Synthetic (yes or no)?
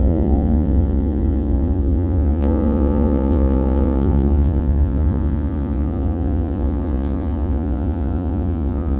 yes